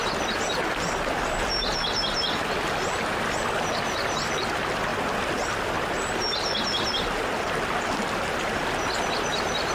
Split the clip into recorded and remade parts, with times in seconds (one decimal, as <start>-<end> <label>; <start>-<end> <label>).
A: 0.0-9.7 recorded